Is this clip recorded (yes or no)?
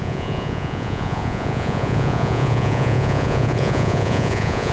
no